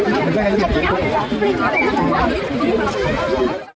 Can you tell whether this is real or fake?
real